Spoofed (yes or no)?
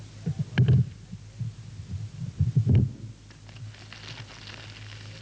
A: no